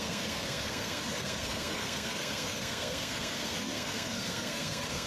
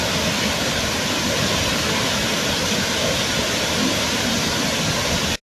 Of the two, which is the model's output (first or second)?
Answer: first